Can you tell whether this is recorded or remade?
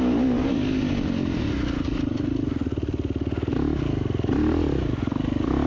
recorded